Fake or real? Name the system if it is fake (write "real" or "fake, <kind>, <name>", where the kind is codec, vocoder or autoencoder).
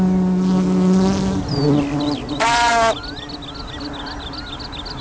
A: real